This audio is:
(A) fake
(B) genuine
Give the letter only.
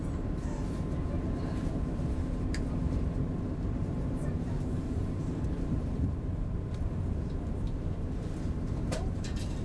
A